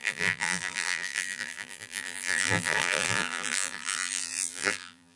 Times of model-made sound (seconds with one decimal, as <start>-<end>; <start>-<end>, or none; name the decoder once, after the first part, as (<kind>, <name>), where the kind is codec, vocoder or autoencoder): 0.0-5.2 (vocoder, BigVGAN v2)